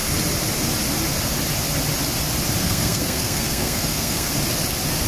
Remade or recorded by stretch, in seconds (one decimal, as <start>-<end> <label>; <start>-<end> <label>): 0.0-2.6 recorded; 2.6-4.3 remade; 4.3-5.1 recorded